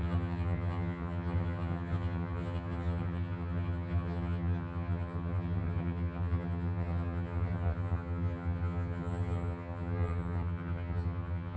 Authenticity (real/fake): fake